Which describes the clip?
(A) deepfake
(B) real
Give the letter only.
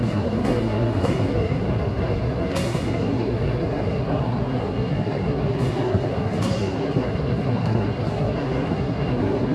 A